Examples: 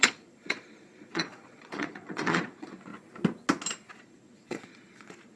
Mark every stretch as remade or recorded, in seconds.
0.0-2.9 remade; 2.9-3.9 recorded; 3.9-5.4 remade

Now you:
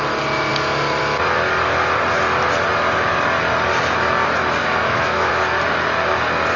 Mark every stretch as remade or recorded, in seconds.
0.0-4.6 recorded; 4.6-5.3 remade; 5.3-6.6 recorded